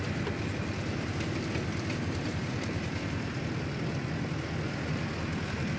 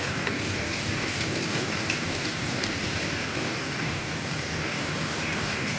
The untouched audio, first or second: first